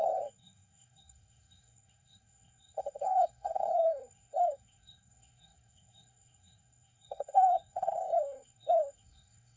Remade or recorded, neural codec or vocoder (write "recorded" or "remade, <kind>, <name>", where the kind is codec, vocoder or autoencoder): remade, codec, SNAC